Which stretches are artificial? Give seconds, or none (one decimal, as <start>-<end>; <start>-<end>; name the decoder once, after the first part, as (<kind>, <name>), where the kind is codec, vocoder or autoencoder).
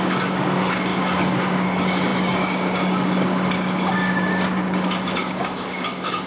0.0-6.3 (codec, DAC)